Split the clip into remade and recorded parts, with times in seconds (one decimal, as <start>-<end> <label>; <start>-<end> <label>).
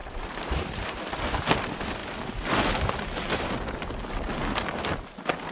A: 0.0-0.8 remade; 0.8-5.5 recorded